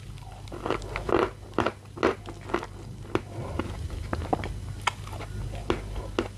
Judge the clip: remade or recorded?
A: recorded